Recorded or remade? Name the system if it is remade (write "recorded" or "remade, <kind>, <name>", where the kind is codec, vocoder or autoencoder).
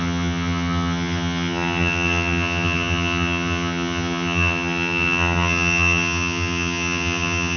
remade, vocoder, HiFi-GAN